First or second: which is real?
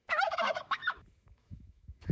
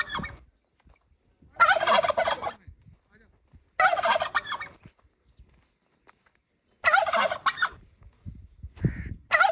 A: second